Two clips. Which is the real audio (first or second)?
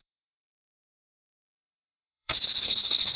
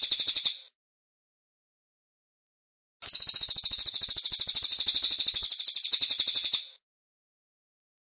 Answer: second